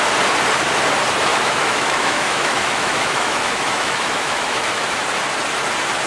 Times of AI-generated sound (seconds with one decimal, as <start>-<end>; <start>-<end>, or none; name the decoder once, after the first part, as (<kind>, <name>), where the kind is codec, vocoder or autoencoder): 1.3-5.0 (autoencoder, DAC-VAE)